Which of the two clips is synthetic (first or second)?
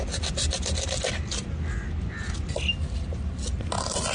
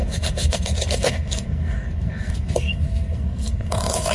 second